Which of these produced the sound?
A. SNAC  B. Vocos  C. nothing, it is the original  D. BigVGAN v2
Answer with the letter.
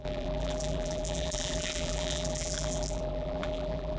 D